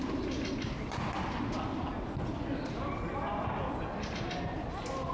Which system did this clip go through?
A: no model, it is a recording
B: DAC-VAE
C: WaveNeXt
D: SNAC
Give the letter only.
A